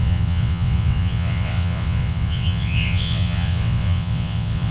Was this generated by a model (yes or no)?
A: yes